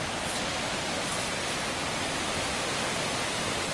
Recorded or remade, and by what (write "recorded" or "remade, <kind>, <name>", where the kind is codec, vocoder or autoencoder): recorded